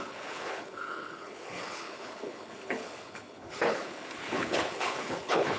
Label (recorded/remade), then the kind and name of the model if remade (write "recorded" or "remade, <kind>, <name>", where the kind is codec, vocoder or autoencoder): remade, codec, HILCodec